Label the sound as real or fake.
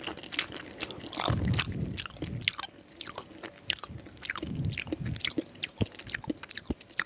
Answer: real